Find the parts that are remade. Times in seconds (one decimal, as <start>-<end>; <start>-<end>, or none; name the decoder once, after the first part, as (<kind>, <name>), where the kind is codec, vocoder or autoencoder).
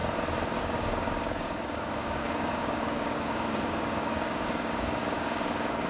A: 0.6-5.9 (codec, DAC)